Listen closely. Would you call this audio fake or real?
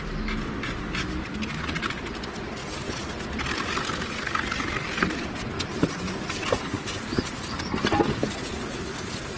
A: real